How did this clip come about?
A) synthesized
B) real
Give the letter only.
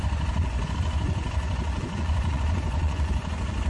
A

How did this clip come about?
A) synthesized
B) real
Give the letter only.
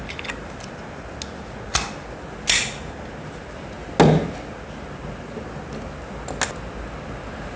B